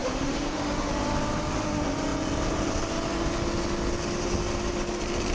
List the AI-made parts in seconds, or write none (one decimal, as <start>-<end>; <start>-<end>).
0.0-0.9